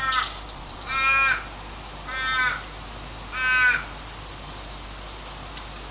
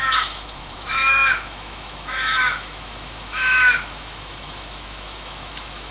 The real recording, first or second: first